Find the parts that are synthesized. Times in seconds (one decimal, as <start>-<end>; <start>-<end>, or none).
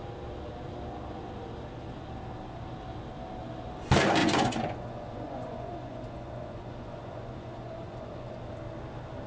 4.2-8.5